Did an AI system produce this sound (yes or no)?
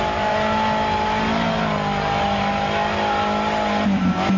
no